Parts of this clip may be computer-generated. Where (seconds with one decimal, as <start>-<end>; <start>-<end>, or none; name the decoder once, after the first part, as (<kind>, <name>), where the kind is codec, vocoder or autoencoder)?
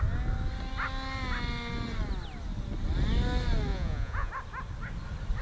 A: 3.7-4.3 (vocoder, Vocos)